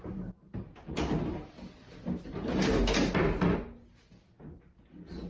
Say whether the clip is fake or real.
real